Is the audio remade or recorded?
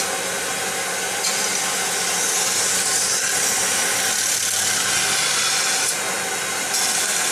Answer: recorded